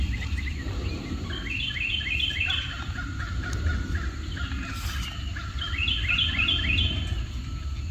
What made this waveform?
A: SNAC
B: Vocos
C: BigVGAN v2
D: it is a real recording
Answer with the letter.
D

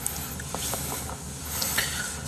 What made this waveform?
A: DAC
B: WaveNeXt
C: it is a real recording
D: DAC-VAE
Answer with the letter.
C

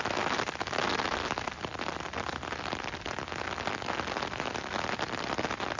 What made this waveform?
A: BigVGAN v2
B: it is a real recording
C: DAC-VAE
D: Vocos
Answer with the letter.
B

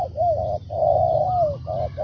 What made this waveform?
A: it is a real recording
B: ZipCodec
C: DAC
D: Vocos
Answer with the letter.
A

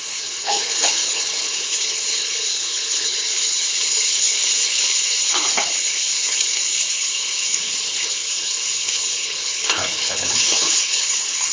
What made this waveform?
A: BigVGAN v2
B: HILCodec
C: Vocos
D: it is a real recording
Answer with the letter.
B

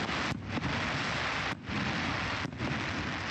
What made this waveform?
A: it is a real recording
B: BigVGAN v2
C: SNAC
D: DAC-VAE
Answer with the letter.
A